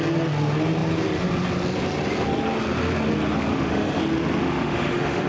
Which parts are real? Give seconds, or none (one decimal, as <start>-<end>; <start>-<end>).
0.0-3.5; 4.0-4.4